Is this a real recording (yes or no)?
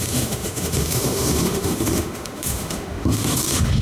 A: no